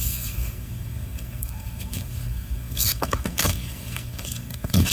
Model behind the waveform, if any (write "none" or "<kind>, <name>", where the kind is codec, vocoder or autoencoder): codec, SNAC